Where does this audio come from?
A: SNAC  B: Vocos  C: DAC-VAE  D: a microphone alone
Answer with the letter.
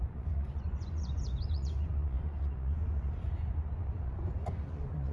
B